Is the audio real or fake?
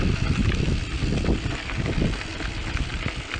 real